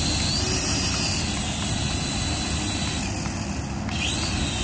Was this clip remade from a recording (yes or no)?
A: no